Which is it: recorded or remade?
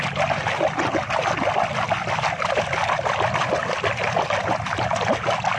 recorded